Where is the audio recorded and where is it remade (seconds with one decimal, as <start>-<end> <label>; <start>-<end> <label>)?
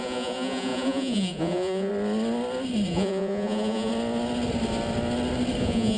0.0-1.9 remade; 1.9-2.9 recorded; 2.9-3.9 remade; 3.9-5.6 recorded; 5.6-6.0 remade